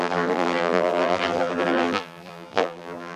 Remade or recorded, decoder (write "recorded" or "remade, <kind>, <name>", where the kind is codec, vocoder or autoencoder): remade, vocoder, BigVGAN v2